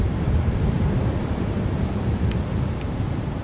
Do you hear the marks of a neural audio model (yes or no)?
yes